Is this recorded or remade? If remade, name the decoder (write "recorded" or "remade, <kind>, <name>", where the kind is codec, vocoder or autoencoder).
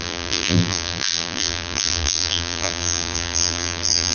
remade, vocoder, BigVGAN v2